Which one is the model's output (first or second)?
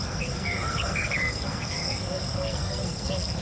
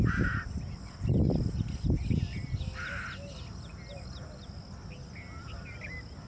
first